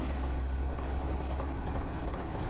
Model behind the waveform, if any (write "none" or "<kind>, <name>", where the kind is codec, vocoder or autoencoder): codec, DAC